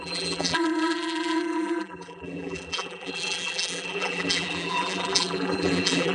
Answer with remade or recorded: remade